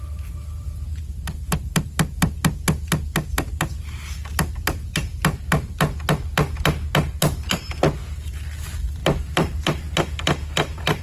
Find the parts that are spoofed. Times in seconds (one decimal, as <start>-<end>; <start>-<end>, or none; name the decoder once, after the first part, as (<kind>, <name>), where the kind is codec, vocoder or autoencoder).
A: 9.0-11.0 (vocoder, BigVGAN v2)